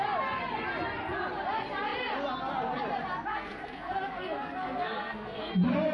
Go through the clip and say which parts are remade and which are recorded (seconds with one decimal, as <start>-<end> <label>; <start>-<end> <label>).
0.0-3.3 recorded; 3.3-5.5 remade; 5.5-5.9 recorded